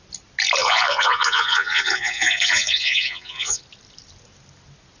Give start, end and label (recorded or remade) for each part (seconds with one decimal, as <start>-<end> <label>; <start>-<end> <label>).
0.0-0.6 recorded; 0.6-3.6 remade; 3.6-5.0 recorded